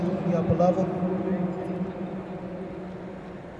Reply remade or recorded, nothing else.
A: recorded